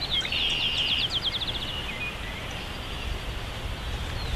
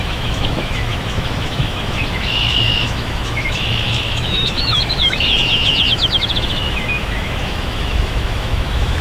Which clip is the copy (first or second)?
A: second